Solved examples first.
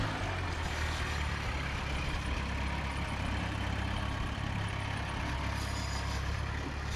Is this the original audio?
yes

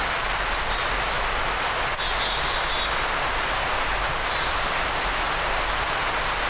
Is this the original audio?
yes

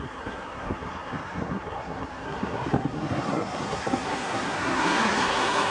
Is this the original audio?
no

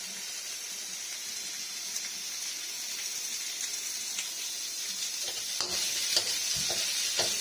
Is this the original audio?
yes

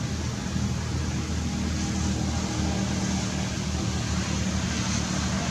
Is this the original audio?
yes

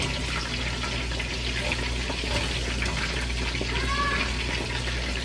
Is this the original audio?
yes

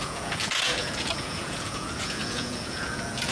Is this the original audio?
no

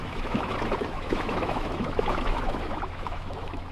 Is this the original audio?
no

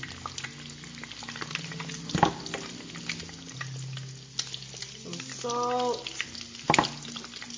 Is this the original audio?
yes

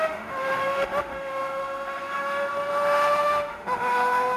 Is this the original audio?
no